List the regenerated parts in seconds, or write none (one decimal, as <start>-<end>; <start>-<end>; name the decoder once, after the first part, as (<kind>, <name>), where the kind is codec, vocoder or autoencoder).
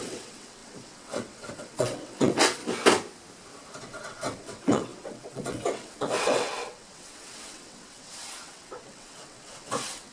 0.0-2.6 (vocoder, WaveNeXt); 3.8-10.1